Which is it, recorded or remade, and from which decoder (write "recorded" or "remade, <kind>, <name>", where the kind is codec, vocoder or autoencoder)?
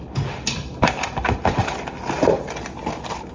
recorded